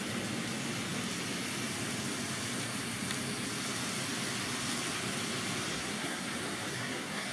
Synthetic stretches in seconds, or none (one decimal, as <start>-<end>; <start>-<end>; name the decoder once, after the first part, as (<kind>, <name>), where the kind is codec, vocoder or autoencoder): 5.7-6.3 (codec, SNAC); 6.7-7.3